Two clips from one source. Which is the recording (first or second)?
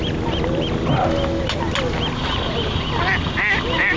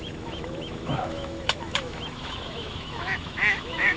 first